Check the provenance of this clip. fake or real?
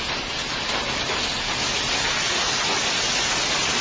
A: real